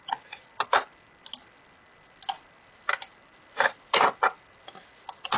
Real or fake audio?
real